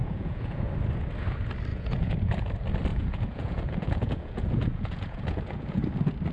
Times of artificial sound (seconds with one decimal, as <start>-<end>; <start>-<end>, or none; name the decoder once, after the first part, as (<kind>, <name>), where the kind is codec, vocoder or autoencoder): 0.0-0.7 (vocoder, Vocos); 1.7-2.5; 2.9-5.8